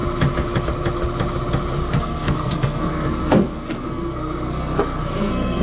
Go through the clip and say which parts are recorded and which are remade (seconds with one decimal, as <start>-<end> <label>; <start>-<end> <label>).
0.0-1.8 recorded; 1.8-5.6 remade